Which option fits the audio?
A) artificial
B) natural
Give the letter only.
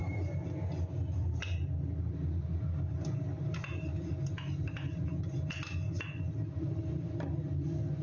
B